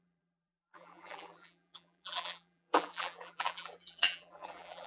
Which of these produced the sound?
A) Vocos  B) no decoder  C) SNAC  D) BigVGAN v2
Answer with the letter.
D